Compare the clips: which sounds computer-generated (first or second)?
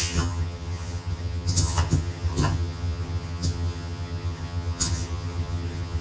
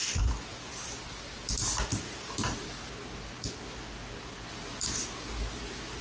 first